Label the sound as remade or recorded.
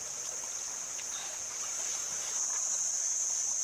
recorded